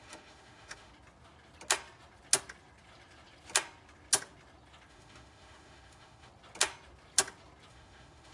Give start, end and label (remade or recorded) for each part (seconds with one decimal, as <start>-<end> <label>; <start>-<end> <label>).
0.0-0.9 remade; 0.9-4.9 recorded; 4.9-6.3 remade; 6.3-7.7 recorded; 7.7-8.3 remade